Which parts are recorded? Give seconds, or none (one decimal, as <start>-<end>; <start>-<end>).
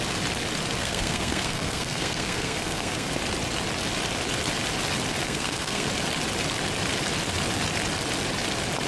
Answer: 0.0-0.8; 3.1-5.2; 5.9-8.9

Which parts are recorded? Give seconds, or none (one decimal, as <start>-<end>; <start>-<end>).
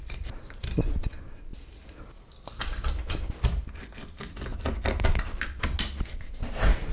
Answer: 0.0-1.5; 2.2-4.5; 5.3-6.9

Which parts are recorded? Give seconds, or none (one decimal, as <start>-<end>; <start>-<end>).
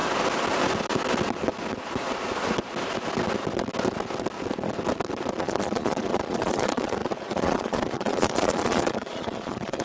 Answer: 0.0-5.3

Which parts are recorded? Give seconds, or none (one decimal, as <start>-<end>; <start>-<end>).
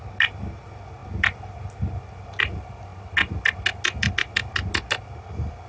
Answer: 0.0-5.7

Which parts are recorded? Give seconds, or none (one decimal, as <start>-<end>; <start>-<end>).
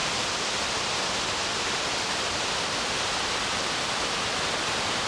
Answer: 0.0-5.1